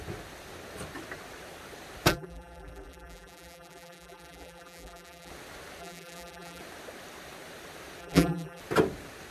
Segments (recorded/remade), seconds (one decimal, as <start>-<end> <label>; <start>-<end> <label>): 0.0-2.1 recorded; 2.1-5.3 remade; 5.3-5.8 recorded; 5.8-6.6 remade; 6.6-8.0 recorded; 8.0-8.6 remade; 8.6-9.3 recorded